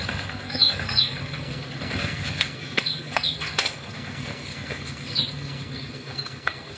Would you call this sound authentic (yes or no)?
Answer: no